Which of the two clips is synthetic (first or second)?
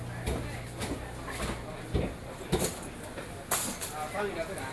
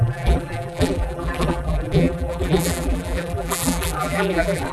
second